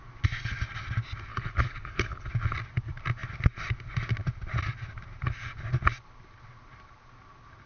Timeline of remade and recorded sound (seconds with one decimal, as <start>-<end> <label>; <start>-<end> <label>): 0.0-1.3 recorded; 1.3-2.3 remade; 2.3-7.7 recorded